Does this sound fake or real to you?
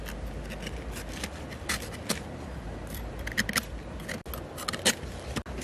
real